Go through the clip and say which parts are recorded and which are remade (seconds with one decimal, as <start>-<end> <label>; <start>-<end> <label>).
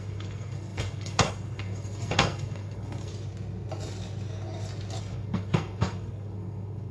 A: 0.0-3.1 remade; 3.1-5.0 recorded; 5.0-6.9 remade